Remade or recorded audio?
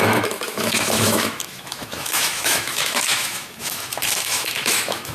remade